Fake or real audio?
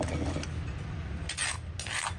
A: real